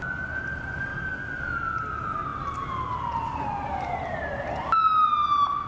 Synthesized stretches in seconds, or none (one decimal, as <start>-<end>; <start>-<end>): none